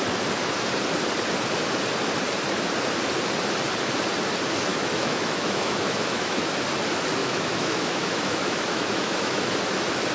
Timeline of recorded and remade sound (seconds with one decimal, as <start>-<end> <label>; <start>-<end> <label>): 0.0-4.7 recorded; 4.7-6.5 remade; 6.5-7.2 recorded; 7.2-9.5 remade; 9.5-10.1 recorded